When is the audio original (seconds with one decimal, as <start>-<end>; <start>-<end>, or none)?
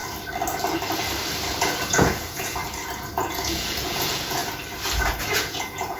0.0-1.6; 2.6-3.1; 4.4-5.0